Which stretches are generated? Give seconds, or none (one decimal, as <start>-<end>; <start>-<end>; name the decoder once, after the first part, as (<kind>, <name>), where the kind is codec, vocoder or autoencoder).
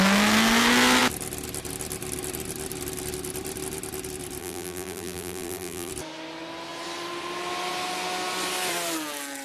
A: 4.4-5.9 (vocoder, BigVGAN v2)